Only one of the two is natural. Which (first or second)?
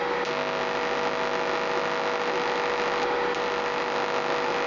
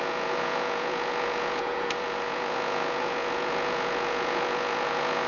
first